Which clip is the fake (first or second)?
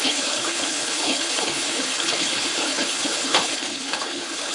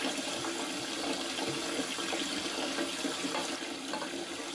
first